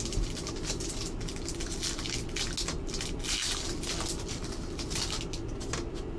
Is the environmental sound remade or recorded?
recorded